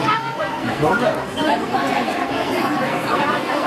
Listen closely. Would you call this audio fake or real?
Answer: fake